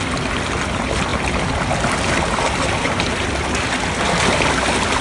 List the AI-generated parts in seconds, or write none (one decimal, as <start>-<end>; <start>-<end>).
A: none